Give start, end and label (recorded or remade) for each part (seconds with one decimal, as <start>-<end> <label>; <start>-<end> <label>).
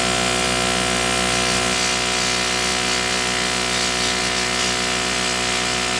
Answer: 0.0-6.0 recorded